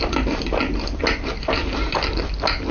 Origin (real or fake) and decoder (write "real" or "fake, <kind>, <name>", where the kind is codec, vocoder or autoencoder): real